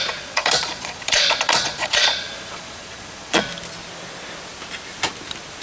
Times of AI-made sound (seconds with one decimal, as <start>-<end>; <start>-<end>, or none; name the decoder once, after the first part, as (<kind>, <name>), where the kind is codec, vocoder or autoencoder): 0.0-3.4 (vocoder, Vocos)